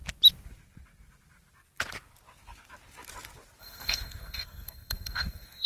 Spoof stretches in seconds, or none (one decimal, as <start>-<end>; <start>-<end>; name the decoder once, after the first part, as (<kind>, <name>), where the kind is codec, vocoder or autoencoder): 3.6-5.7 (codec, SNAC)